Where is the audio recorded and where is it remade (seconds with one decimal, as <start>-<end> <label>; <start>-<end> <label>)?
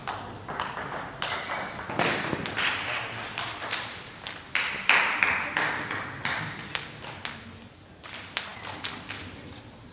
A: 0.0-9.9 recorded